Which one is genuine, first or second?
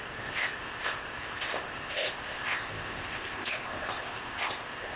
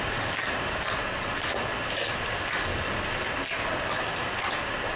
second